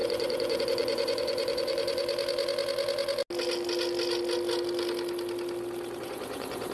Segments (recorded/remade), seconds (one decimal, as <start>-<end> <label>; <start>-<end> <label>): 0.0-2.0 remade; 2.0-6.0 recorded; 6.0-6.7 remade